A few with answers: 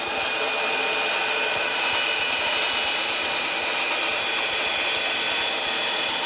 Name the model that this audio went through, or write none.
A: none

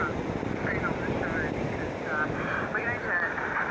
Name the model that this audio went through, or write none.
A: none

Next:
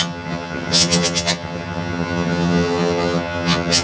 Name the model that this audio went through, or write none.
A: vocoder, HiFi-GAN